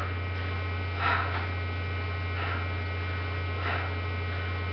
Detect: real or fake real